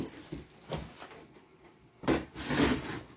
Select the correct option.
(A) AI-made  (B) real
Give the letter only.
B